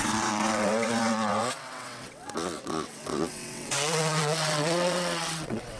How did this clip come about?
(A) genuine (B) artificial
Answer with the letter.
B